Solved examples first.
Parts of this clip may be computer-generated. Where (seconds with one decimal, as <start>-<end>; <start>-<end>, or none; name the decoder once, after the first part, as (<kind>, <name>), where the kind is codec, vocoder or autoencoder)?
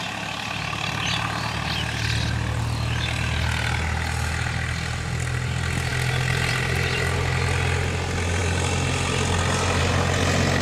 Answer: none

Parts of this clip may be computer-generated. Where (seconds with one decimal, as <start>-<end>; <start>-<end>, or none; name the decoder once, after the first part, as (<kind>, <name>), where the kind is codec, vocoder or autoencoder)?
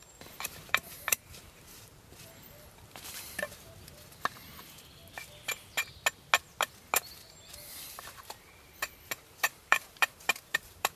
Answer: 0.0-5.0 (vocoder, BigVGAN v2); 7.8-11.0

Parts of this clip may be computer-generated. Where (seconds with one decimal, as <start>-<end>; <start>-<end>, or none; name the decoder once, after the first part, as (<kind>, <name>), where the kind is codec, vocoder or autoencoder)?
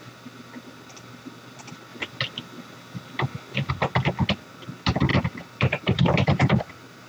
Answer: 5.1-6.6 (vocoder, BigVGAN v2)